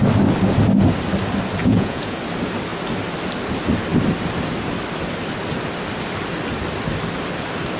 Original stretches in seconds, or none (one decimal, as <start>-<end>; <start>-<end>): 0.0-1.6; 2.2-7.8